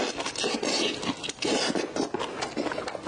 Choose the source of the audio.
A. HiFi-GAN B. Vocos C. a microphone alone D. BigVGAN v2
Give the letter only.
C